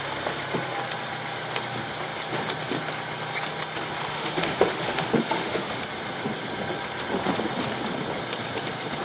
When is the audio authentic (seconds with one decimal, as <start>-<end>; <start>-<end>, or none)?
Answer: 0.0-4.1; 5.8-9.0